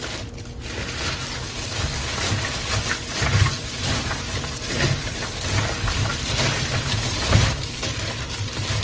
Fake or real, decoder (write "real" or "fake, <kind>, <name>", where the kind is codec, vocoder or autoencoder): real